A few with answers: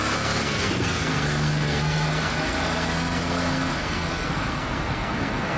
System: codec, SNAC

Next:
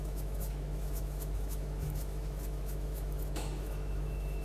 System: autoencoder, DAC-VAE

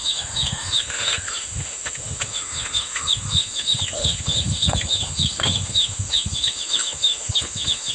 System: autoencoder, DAC-VAE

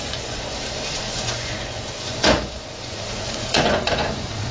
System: vocoder, Vocos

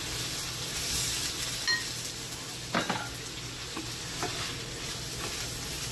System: none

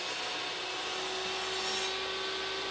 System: none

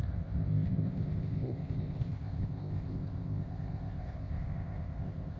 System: codec, ZipCodec